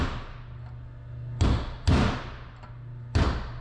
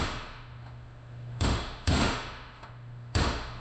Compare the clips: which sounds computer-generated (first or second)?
second